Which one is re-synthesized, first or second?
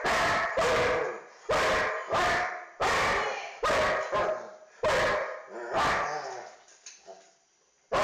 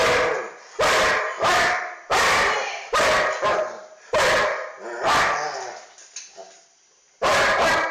second